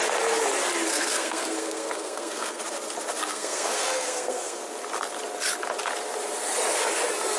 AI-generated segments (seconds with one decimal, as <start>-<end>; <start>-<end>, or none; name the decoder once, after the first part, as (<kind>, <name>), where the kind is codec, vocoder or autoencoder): 0.9-2.6 (codec, SNAC); 3.2-4.6